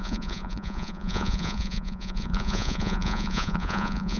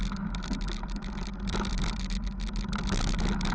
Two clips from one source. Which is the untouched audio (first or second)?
second